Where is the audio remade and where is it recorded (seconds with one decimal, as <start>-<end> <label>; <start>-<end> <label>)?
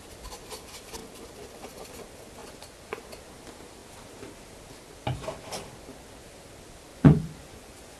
0.0-2.4 recorded; 2.4-3.0 remade; 3.0-6.9 recorded; 6.9-8.0 remade